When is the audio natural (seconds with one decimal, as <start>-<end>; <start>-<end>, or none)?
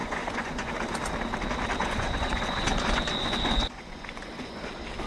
0.7-1.8; 4.6-5.1